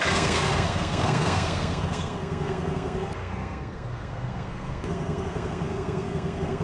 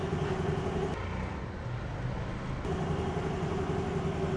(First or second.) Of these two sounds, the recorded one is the second